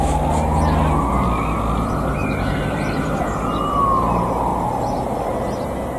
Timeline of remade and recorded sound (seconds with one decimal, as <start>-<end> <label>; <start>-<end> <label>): 0.0-2.2 recorded; 2.2-3.2 remade; 3.2-4.5 recorded; 4.5-5.3 remade; 5.3-6.0 recorded